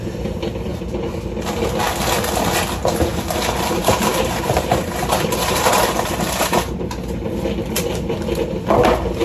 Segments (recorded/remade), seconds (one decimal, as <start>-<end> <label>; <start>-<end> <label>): 0.0-3.1 recorded; 3.1-6.8 remade; 6.8-9.2 recorded